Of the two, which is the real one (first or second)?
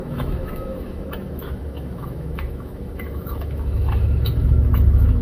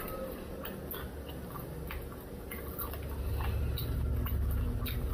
second